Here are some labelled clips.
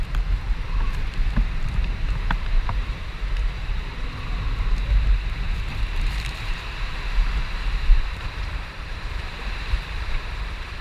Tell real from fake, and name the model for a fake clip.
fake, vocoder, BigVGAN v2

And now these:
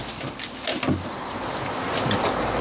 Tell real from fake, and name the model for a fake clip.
real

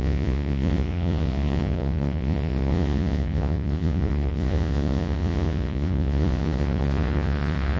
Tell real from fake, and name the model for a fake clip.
fake, vocoder, Vocos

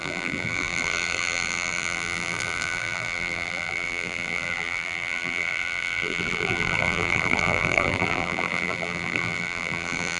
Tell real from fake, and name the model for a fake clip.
fake, vocoder, BigVGAN v2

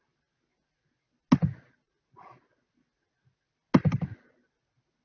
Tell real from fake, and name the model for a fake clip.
real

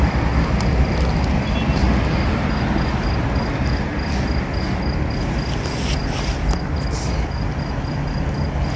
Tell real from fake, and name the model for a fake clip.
real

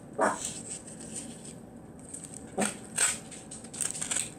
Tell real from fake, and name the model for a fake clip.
real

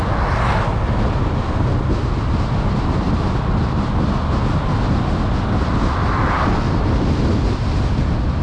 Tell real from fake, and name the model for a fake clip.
real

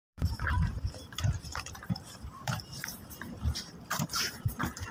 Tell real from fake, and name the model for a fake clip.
fake, vocoder, BigVGAN v2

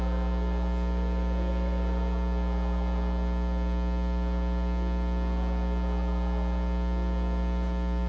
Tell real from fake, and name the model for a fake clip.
real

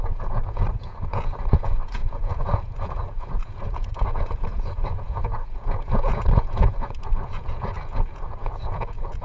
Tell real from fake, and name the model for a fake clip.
fake, vocoder, Vocos